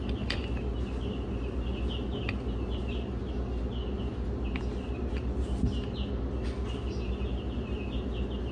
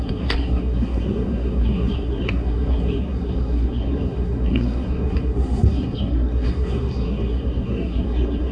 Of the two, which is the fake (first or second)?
second